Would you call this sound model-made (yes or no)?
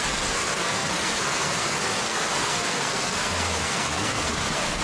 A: yes